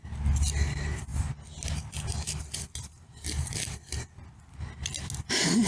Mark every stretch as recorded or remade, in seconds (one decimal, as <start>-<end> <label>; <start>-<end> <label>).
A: 0.0-5.7 recorded